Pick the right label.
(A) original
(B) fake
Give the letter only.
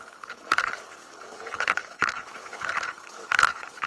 B